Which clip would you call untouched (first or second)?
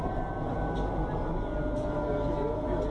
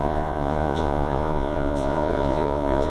first